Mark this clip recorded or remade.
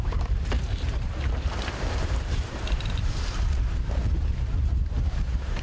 remade